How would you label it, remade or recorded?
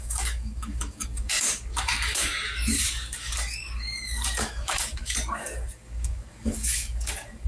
remade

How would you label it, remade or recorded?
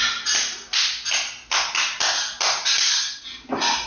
recorded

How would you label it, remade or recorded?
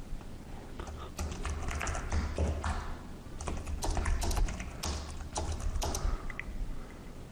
recorded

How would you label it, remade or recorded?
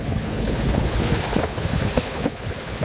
remade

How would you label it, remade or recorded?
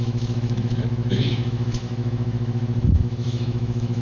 remade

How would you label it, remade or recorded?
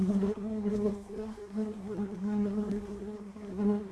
remade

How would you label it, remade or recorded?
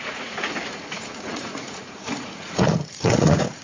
remade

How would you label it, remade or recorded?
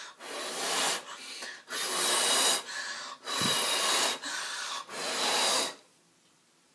recorded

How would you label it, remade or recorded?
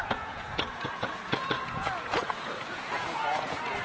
remade